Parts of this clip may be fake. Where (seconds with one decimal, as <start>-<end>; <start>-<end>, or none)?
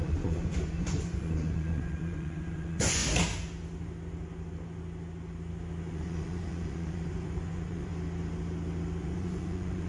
0.0-3.0; 5.9-7.9; 9.0-9.9